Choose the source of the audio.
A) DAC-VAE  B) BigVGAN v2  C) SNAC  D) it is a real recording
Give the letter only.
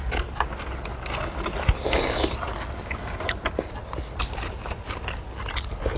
D